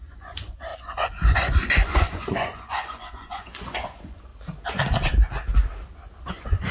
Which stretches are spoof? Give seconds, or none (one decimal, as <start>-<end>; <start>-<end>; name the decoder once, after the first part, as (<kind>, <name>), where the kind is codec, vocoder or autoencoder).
0.0-4.3 (vocoder, Vocos); 6.3-6.7